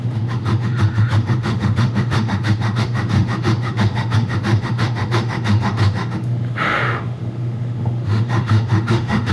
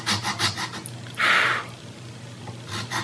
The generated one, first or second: first